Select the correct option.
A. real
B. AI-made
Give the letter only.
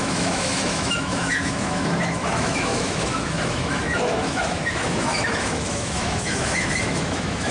B